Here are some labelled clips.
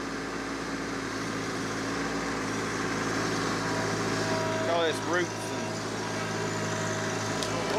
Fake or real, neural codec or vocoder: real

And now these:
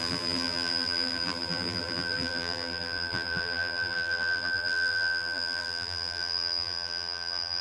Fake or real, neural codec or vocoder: fake, vocoder, BigVGAN v2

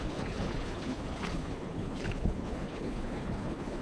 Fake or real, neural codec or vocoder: fake, codec, HILCodec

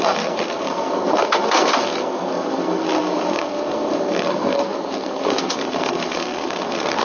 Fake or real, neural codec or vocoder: fake, codec, SNAC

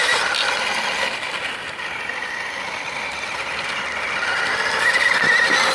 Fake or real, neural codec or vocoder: real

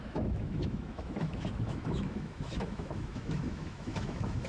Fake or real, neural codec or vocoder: fake, autoencoder, DAC-VAE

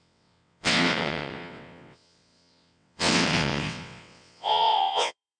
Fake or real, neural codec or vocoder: fake, vocoder, WaveNeXt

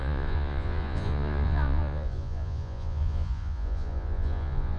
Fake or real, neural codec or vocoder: fake, vocoder, Vocos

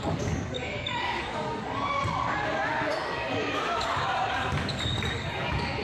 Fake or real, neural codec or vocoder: fake, codec, DAC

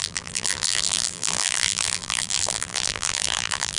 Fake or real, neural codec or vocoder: fake, vocoder, BigVGAN v2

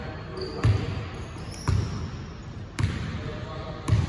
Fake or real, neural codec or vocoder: real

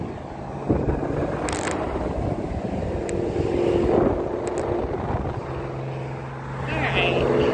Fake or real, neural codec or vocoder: real